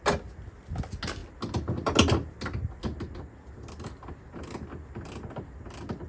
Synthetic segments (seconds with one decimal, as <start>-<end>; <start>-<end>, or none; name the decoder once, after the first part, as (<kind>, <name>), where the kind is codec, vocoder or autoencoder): none